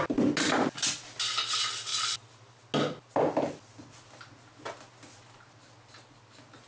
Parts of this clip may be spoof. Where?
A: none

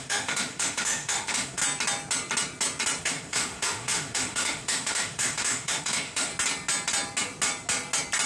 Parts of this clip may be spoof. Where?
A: 0.0-1.6 (autoencoder, DAC-VAE); 3.0-6.3

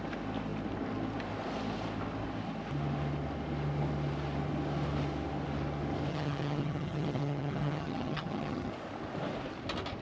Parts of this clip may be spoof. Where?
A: 6.1-8.7 (vocoder, HiFi-GAN)